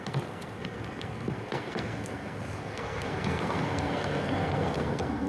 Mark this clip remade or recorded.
remade